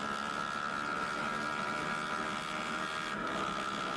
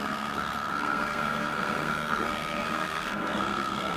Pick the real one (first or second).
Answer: first